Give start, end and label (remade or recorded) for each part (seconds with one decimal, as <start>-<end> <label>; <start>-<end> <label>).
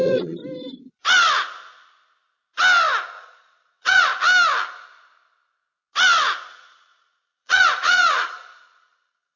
0.0-0.4 remade; 0.4-3.2 recorded; 3.2-4.1 remade; 4.1-6.5 recorded; 6.5-9.4 remade